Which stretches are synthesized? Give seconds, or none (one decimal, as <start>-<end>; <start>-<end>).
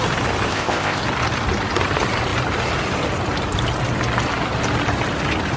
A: 0.5-1.0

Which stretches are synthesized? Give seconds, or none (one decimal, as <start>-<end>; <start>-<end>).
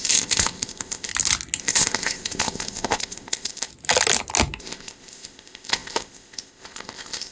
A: 0.0-1.1; 1.6-3.7; 4.6-7.3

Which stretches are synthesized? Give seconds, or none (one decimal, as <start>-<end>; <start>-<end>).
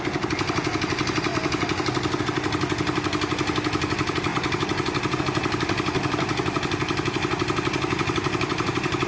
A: none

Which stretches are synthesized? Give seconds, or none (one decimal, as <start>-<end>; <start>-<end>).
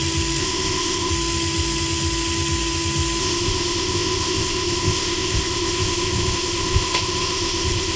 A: 0.4-1.1; 3.2-8.0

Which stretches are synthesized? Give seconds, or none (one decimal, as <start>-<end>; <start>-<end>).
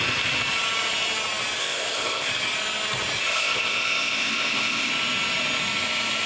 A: 1.6-2.3; 3.3-4.9